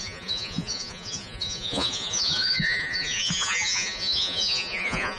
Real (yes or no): no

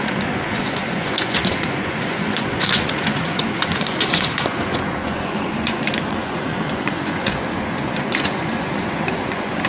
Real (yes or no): no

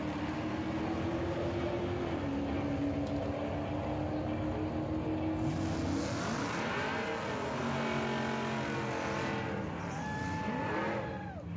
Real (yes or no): yes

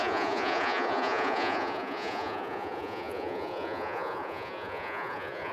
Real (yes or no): no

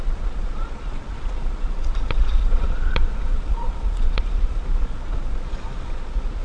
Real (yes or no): no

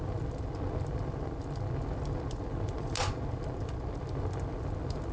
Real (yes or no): yes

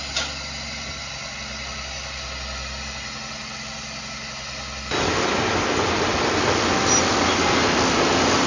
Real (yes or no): yes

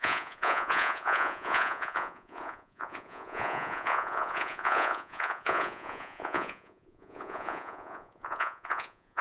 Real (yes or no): no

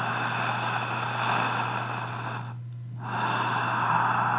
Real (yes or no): yes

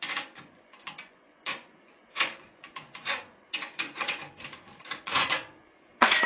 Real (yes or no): no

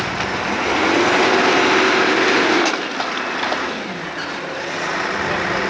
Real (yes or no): yes